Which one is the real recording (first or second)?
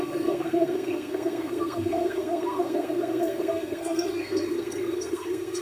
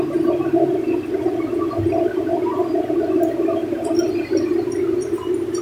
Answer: second